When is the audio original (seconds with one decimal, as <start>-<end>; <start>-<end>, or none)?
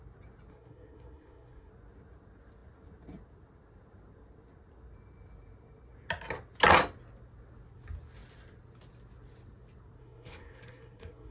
0.0-0.5; 1.7-10.0